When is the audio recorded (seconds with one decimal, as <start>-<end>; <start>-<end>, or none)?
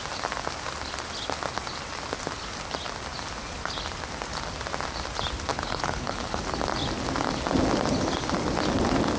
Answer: 0.0-5.5; 6.4-9.2